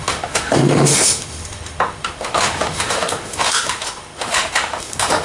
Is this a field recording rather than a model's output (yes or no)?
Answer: no